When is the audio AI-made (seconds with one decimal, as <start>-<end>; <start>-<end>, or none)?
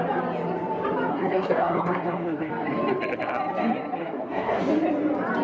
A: 1.1-2.5; 4.0-4.6